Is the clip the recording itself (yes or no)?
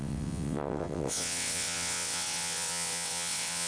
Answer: no